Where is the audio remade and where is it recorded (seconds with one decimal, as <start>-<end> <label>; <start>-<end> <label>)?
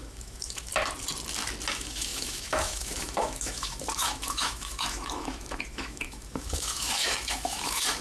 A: 0.0-0.7 remade; 0.7-1.7 recorded; 1.7-8.0 remade